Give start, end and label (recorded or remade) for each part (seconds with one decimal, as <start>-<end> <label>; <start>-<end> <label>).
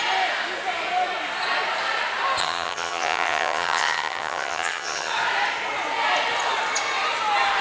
0.0-2.4 recorded; 2.4-5.1 remade; 5.1-7.6 recorded